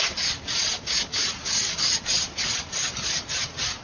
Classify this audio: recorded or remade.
recorded